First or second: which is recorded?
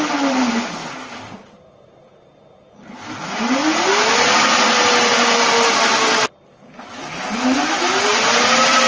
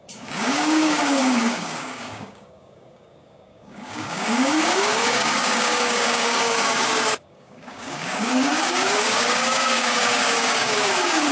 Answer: first